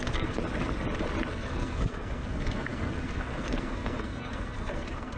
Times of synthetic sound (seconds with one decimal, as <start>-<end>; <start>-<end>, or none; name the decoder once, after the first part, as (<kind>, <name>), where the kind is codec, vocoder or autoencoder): 0.0-0.4 (codec, SNAC); 1.3-5.2